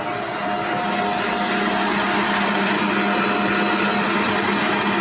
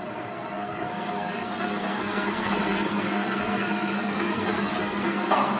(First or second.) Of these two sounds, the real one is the first